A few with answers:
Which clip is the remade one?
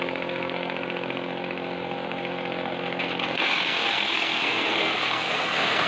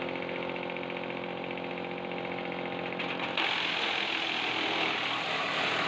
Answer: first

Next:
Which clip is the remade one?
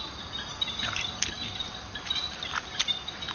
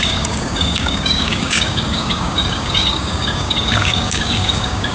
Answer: second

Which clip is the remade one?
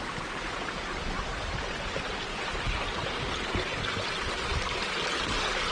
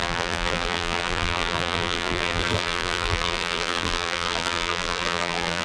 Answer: second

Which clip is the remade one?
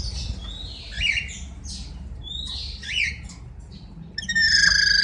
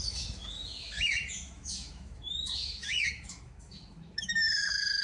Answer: second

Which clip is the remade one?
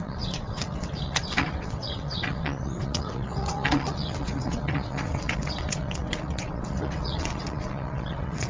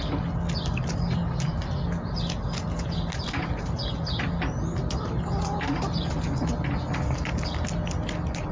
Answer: first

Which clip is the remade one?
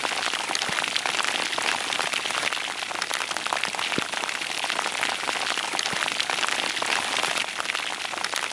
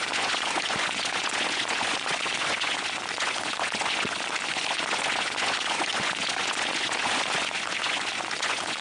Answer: second